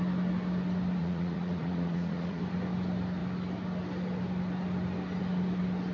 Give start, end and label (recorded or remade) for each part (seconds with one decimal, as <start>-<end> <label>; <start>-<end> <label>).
0.0-1.0 recorded; 1.0-2.4 remade; 2.4-5.9 recorded